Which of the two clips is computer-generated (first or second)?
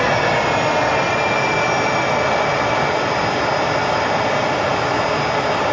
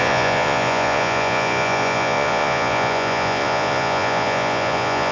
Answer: second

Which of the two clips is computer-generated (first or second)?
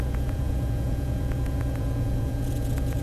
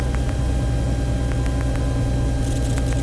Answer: first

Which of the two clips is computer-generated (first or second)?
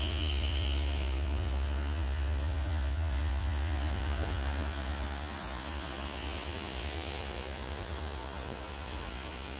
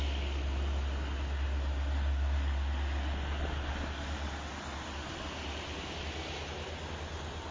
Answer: first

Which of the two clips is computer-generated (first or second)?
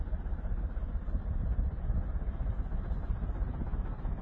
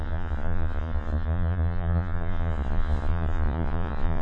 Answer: second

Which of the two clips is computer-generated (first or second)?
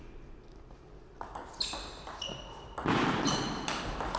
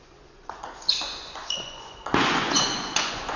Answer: second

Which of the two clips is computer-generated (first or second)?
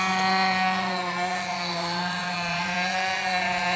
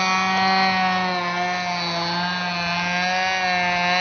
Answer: first